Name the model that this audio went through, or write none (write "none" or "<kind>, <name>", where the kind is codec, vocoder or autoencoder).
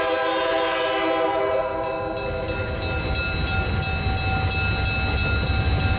none